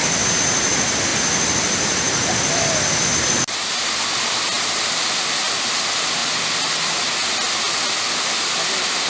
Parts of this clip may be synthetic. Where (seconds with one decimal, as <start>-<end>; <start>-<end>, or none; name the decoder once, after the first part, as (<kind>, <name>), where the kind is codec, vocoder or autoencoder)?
none